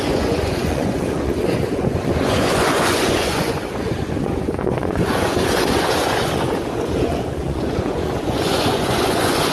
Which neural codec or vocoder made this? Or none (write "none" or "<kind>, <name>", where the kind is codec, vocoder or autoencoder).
vocoder, Vocos